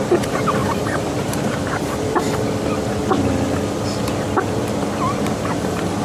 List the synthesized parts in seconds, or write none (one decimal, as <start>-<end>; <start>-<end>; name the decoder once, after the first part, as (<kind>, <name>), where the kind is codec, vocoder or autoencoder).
0.0-3.0 (vocoder, BigVGAN v2); 4.5-6.0